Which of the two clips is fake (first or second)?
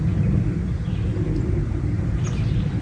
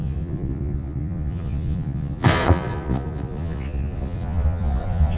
second